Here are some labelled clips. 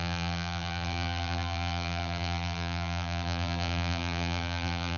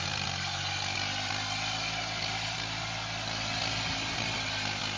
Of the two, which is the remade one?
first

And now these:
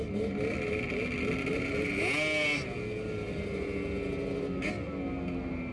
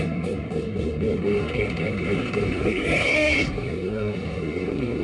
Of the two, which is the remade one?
second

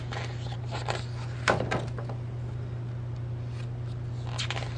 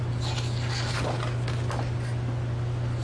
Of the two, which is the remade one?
first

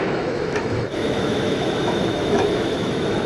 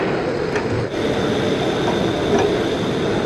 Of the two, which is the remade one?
first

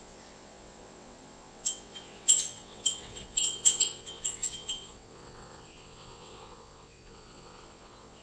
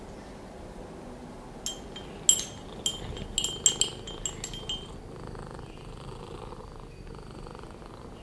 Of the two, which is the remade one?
first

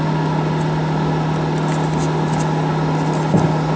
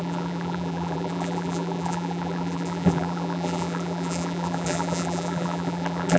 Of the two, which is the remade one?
second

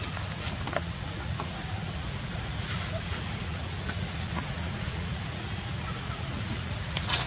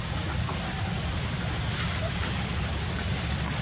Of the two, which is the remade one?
first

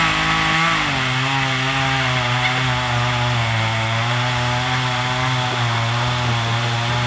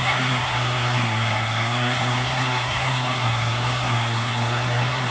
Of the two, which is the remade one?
second